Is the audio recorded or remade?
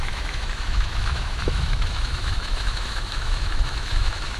remade